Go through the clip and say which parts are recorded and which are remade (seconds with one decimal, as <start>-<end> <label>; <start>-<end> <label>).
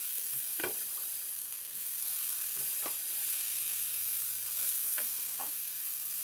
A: 0.0-0.6 remade; 0.6-1.3 recorded; 1.3-2.6 remade; 2.6-3.3 recorded; 3.3-6.2 remade